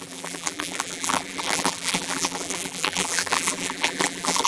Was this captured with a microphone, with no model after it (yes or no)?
no